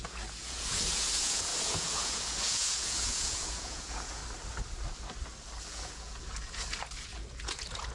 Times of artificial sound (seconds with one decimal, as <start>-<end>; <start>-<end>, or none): 0.0-4.2; 5.6-7.9